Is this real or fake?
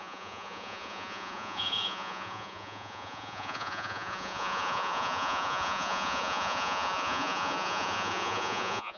fake